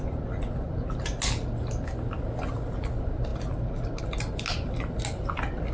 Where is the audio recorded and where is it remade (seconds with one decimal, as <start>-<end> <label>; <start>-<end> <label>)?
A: 0.0-5.7 recorded